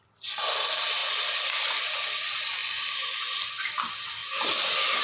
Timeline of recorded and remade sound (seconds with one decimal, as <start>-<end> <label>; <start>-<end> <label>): 0.0-5.0 recorded